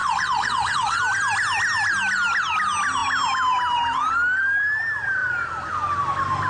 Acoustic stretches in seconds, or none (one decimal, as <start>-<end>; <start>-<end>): 1.0-6.5